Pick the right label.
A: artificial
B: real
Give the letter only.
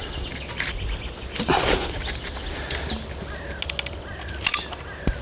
B